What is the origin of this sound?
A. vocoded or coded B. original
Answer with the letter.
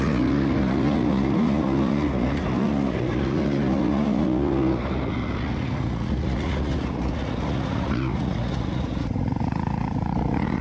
A